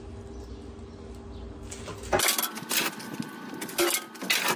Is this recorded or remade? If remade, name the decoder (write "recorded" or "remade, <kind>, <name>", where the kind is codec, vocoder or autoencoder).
recorded